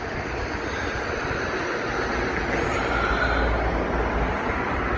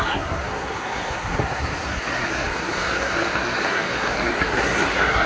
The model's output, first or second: second